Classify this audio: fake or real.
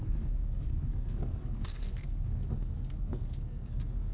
fake